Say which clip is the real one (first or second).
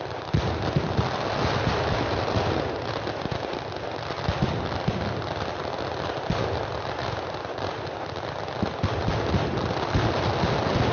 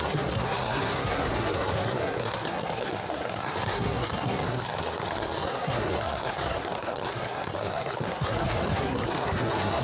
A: first